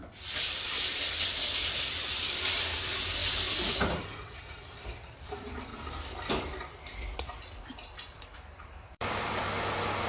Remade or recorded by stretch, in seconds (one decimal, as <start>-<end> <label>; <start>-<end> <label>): 0.0-10.1 remade